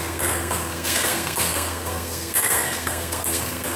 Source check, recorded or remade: remade